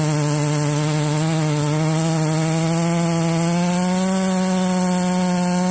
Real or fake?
real